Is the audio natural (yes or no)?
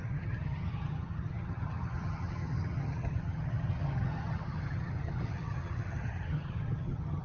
no